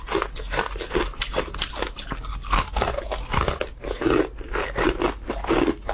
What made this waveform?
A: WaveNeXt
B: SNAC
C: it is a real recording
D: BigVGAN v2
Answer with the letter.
C